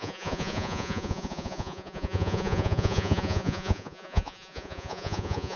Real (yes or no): no